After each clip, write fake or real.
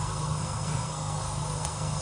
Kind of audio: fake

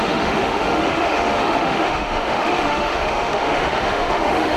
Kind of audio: fake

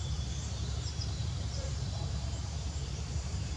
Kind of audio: fake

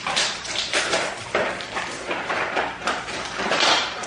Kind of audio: fake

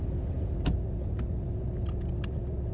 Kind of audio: real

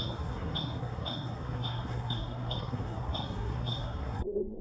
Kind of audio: fake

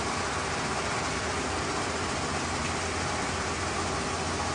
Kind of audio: real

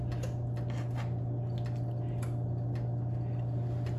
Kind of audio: real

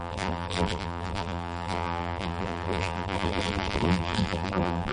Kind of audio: fake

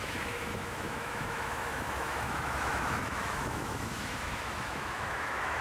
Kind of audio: fake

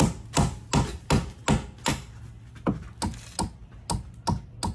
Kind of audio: real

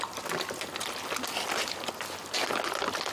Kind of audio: real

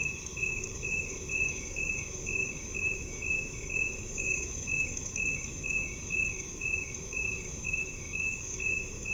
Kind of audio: fake